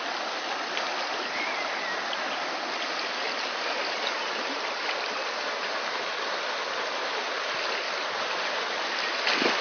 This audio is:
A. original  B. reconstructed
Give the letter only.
A